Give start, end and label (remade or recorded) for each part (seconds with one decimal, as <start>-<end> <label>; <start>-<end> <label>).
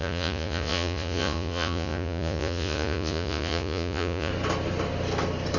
0.0-4.3 remade; 4.3-5.6 recorded